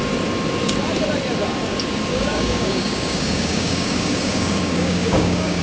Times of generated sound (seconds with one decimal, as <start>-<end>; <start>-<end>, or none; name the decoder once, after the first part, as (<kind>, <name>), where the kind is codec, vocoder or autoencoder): 2.1-5.6 (codec, DAC)